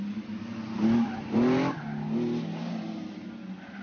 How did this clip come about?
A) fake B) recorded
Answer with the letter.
B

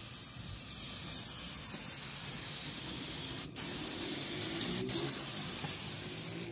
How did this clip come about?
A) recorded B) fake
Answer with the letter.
A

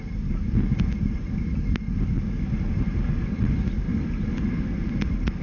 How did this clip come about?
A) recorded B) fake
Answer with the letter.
A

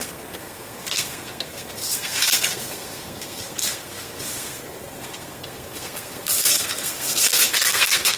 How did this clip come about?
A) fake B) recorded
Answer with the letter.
A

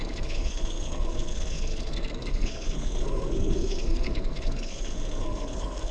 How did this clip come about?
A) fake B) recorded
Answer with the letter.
A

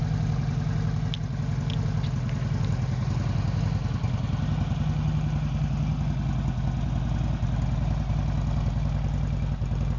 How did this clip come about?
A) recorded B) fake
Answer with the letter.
A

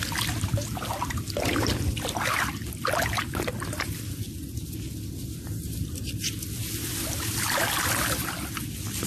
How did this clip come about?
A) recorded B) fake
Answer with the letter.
A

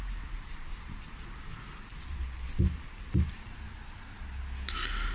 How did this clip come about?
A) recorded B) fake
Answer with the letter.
A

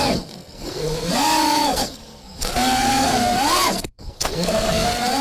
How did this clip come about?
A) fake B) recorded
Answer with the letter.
A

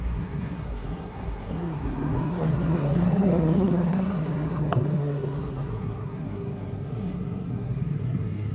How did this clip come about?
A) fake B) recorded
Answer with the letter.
A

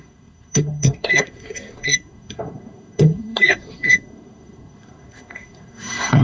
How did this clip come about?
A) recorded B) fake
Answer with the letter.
B